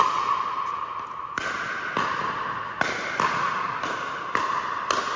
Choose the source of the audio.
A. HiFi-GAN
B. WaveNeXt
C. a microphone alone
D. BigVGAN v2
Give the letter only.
C